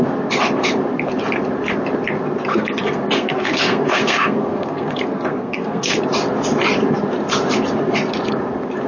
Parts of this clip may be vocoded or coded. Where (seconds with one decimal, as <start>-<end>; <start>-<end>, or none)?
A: 2.5-6.0